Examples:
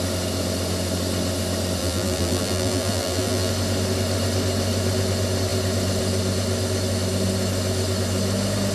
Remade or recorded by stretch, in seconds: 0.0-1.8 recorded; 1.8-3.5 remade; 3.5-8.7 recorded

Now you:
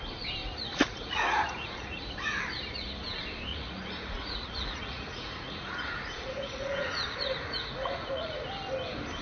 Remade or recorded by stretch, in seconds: 0.0-0.4 recorded; 0.4-2.4 remade; 2.4-3.5 recorded; 3.5-8.5 remade; 8.5-9.2 recorded

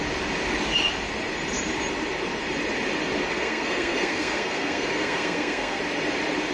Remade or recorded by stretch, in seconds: 0.0-3.3 recorded; 3.3-5.8 remade; 5.8-6.5 recorded